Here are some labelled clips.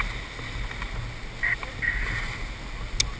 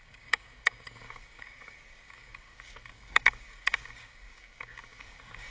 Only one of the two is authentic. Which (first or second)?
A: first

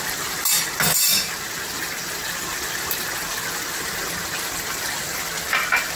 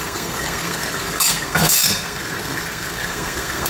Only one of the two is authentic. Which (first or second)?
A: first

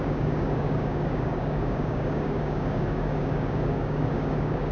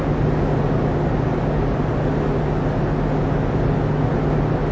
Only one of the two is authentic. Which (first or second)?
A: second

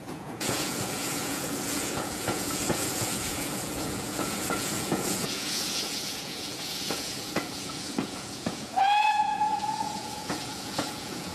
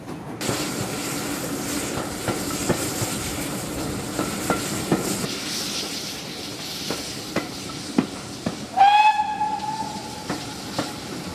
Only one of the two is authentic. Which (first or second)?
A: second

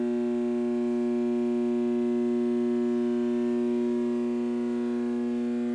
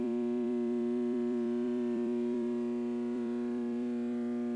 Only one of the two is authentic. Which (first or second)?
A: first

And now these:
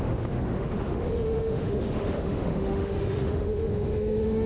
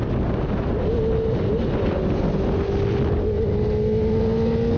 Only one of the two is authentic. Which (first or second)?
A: second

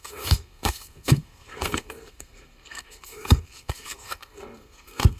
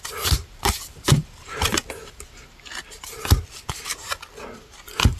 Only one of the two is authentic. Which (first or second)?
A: second